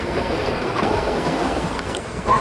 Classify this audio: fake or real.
fake